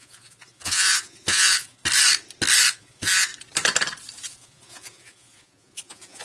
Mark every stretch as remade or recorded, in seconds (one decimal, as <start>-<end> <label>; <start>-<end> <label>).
0.0-1.8 remade; 1.8-2.7 recorded; 2.7-3.3 remade; 3.3-4.3 recorded; 4.3-6.2 remade